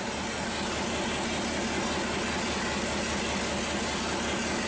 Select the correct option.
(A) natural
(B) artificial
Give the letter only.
A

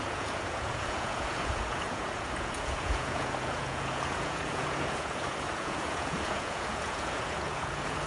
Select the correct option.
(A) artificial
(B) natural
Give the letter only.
A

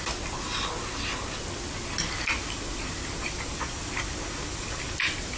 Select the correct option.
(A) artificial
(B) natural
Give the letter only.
B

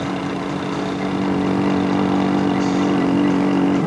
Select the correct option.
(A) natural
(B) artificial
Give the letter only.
A